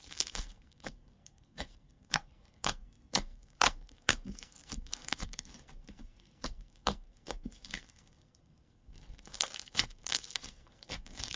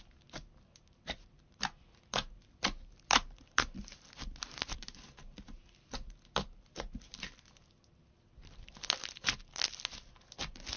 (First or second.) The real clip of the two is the second